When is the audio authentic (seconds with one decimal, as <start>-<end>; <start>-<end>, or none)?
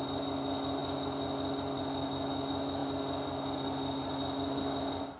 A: 0.0-5.2